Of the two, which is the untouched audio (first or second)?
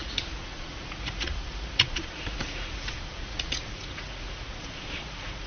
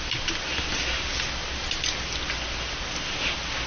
second